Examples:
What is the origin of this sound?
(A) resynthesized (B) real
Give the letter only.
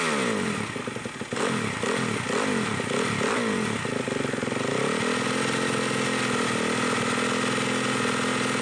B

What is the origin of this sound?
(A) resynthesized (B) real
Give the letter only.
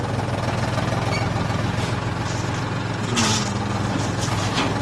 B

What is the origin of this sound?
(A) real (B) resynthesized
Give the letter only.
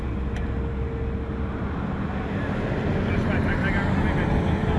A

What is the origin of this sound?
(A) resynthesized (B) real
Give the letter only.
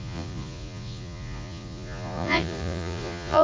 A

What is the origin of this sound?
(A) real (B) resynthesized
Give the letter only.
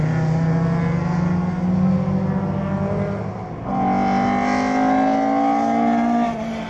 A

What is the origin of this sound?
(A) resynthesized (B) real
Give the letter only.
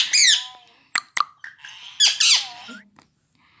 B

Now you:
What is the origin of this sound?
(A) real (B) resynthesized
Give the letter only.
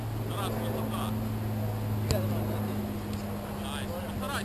A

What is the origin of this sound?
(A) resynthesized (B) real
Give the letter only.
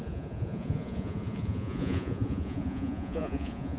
A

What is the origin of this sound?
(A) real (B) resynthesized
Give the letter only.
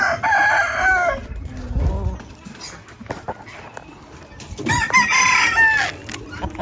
A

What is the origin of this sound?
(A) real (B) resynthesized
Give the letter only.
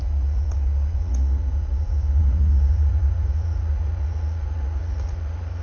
B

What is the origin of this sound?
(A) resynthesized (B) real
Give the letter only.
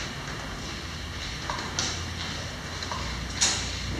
B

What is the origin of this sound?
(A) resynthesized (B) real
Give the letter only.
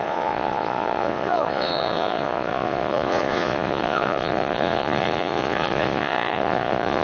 A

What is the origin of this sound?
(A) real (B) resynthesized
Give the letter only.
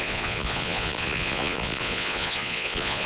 B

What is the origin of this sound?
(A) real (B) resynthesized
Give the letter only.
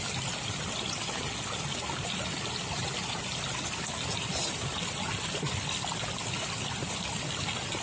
A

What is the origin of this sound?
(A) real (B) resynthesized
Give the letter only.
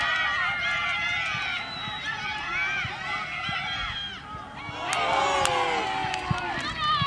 A